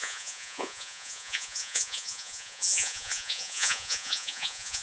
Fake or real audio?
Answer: fake